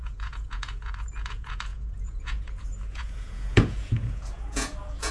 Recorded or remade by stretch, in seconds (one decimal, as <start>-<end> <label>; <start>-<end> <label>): 0.0-5.1 remade